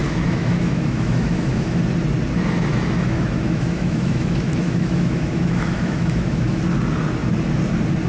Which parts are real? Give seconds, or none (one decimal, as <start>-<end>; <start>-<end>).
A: 1.8-2.7; 6.6-8.1